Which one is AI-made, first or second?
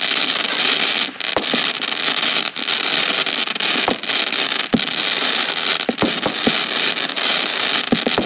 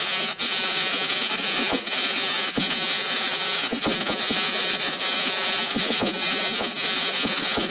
second